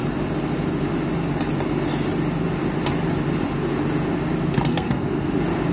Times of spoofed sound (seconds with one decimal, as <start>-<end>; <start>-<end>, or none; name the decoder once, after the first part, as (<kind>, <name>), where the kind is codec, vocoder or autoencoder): 4.7-5.3 (codec, SNAC)